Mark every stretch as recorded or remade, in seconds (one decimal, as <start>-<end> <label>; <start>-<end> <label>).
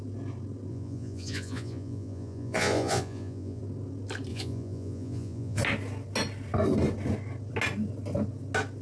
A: 0.0-0.7 recorded; 0.7-3.6 remade; 3.6-4.3 recorded; 4.3-5.6 remade; 5.6-8.8 recorded